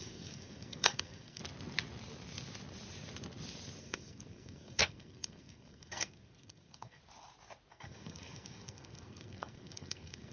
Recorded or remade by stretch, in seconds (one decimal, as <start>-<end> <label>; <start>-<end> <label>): 0.0-1.4 remade; 1.4-3.8 recorded; 3.8-7.0 remade; 7.0-7.7 recorded; 7.7-10.3 remade